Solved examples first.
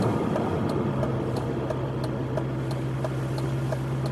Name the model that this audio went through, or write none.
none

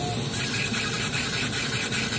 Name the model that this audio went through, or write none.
none